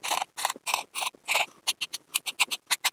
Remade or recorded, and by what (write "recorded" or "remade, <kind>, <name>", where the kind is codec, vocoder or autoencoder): recorded